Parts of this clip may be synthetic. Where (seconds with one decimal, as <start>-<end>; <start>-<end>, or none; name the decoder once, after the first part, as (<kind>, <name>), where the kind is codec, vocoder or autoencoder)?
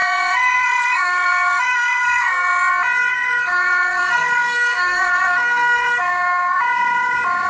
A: 0.0-2.7 (codec, SNAC); 3.1-6.6